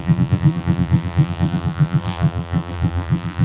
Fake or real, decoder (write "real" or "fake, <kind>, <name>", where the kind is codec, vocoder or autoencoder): fake, vocoder, BigVGAN v2